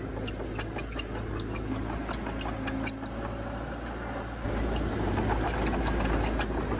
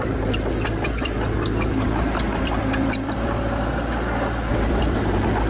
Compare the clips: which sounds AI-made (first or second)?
second